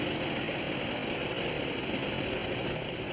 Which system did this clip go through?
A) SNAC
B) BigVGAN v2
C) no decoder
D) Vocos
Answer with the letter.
C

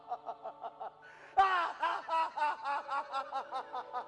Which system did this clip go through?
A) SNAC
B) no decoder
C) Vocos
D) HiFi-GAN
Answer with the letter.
B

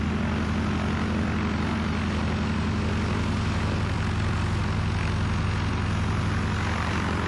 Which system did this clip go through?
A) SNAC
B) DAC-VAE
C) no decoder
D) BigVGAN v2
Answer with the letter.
C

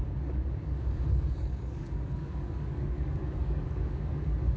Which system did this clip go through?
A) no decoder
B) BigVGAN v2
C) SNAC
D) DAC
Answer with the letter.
D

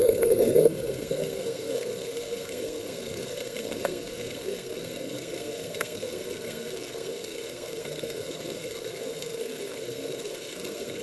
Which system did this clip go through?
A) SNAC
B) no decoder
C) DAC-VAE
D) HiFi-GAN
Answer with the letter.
A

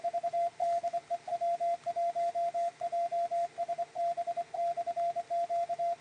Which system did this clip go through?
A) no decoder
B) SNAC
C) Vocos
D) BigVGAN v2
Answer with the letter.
A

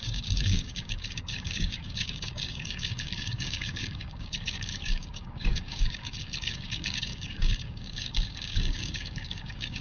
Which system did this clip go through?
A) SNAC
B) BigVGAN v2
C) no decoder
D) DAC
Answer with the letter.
D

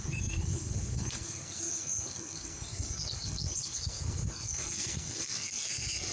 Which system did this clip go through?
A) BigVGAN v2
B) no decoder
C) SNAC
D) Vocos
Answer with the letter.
C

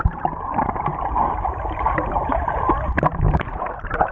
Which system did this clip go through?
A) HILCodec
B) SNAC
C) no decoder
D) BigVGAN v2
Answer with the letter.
D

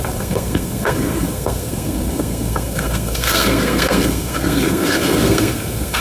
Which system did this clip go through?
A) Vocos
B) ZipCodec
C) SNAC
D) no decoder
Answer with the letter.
C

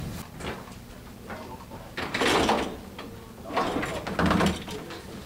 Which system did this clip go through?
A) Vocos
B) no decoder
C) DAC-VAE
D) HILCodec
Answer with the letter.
B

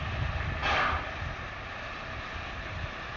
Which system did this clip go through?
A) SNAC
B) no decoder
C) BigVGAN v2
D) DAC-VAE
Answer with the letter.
B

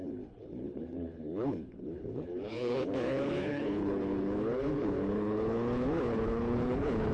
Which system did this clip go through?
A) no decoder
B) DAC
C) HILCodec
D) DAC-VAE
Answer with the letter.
C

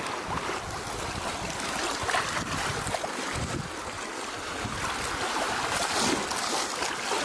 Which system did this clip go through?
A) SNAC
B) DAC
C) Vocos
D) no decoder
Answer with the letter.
D